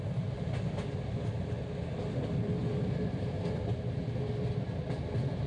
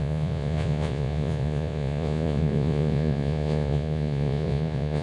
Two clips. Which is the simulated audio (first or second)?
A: second